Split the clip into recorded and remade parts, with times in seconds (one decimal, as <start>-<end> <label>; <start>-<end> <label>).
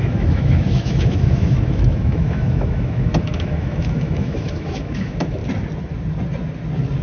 0.0-5.4 remade; 5.4-7.0 recorded